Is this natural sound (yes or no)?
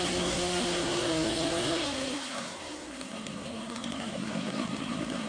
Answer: no